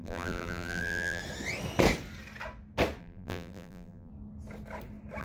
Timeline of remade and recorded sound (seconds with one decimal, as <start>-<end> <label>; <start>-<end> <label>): 0.0-1.2 remade; 1.2-3.0 recorded; 3.0-4.1 remade; 4.1-5.2 recorded